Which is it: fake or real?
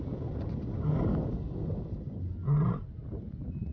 real